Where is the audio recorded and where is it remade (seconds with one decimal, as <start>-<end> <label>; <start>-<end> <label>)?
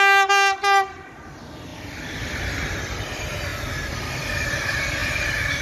0.0-1.7 recorded; 1.7-2.4 remade; 2.4-3.5 recorded; 3.5-4.2 remade; 4.2-5.0 recorded; 5.0-5.6 remade